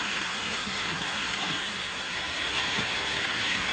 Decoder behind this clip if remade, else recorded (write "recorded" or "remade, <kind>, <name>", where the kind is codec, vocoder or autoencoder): remade, codec, SNAC